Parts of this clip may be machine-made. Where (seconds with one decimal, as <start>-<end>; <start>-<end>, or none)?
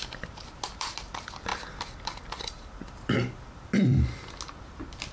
1.5-4.2